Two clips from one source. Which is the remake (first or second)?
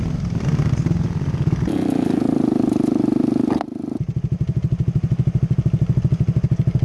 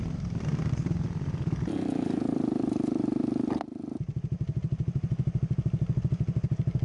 second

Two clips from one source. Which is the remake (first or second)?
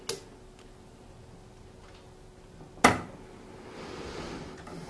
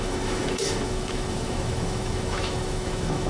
second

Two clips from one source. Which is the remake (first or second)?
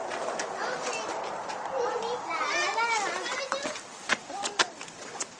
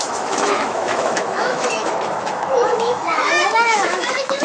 second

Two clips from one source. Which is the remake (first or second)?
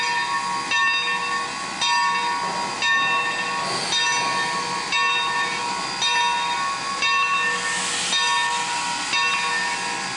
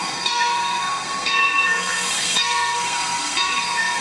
second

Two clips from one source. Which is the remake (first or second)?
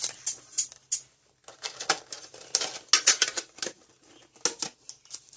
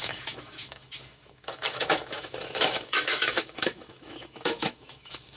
second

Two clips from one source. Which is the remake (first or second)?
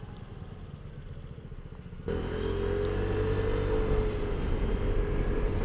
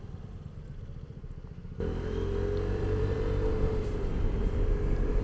second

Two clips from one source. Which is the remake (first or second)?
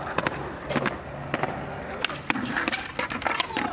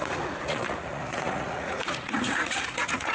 second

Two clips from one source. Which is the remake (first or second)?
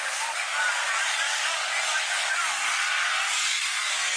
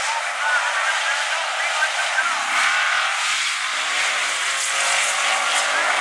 first